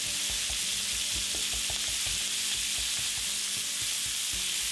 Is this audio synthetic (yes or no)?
no